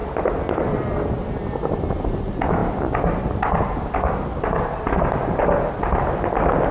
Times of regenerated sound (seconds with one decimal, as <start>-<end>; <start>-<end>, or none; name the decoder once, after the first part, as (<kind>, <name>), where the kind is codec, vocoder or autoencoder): none